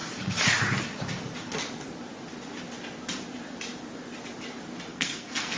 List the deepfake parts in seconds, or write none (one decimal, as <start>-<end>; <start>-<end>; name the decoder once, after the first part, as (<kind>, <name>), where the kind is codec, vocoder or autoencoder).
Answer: 4.9-5.6 (codec, SNAC)